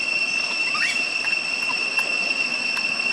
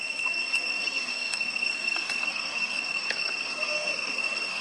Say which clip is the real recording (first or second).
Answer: first